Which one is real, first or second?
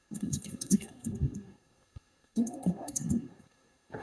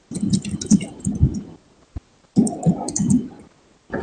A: second